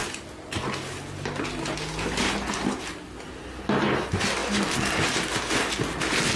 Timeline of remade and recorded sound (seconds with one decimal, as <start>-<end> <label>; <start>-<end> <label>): 0.0-6.4 recorded